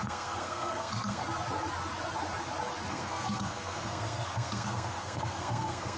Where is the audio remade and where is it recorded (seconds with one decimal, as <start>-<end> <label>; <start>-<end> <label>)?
0.0-1.2 remade; 1.2-2.9 recorded; 2.9-6.0 remade